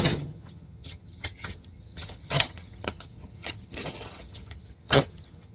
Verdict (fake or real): fake